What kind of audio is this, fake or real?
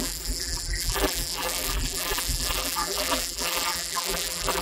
fake